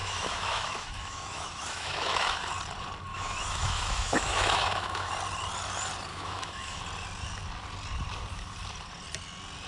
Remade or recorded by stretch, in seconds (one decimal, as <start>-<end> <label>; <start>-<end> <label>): 0.0-2.5 remade; 2.5-3.1 recorded; 3.1-5.1 remade; 5.1-6.1 recorded; 6.1-6.8 remade; 6.8-9.7 recorded